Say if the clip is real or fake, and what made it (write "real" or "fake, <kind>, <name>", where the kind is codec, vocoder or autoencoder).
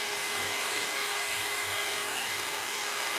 fake, codec, DAC